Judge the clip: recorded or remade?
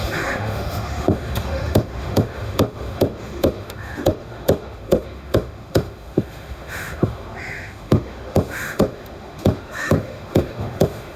remade